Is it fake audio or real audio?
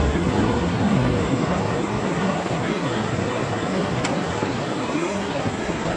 fake